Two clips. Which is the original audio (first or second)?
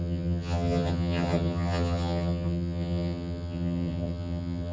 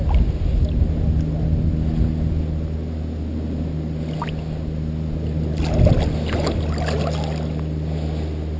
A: second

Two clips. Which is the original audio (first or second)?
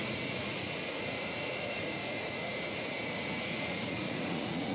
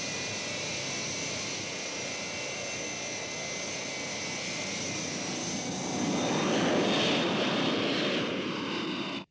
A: second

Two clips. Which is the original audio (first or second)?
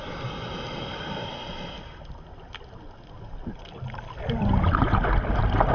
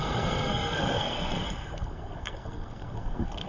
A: first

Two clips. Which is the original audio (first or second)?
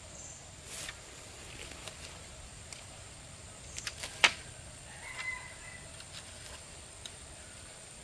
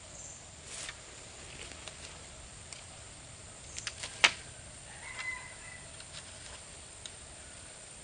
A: second